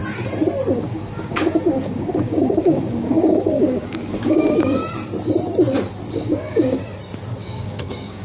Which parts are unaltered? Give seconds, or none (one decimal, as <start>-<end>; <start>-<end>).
0.0-0.7; 4.8-6.1; 6.8-7.4